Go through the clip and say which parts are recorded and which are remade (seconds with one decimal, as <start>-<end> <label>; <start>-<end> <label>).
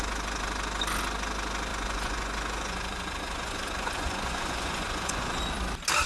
0.0-1.7 recorded; 1.7-5.4 remade; 5.4-6.1 recorded